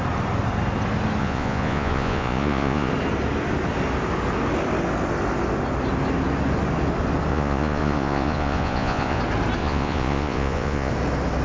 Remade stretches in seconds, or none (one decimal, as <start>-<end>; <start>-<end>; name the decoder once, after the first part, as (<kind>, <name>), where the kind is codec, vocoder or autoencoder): 1.2-2.9 (vocoder, Vocos); 7.3-9.2; 9.6-10.9

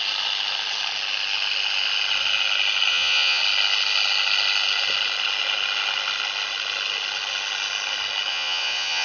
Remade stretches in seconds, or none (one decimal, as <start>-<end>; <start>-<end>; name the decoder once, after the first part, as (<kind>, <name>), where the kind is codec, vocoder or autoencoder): 2.9-3.4 (vocoder, Vocos); 8.3-9.0

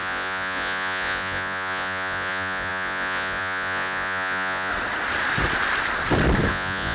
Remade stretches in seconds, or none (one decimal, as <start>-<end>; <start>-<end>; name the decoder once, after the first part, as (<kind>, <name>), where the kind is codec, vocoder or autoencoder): 0.0-4.7 (vocoder, Vocos); 6.5-6.9

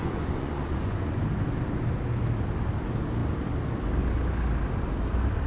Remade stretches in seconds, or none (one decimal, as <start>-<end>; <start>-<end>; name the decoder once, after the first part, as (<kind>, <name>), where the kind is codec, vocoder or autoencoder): 0.0-1.2 (vocoder, Vocos)

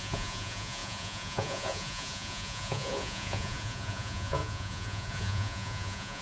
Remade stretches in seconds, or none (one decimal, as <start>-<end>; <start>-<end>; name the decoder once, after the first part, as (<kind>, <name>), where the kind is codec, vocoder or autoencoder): 0.0-6.2 (vocoder, Vocos)